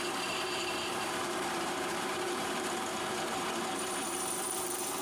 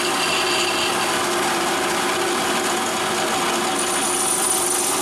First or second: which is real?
second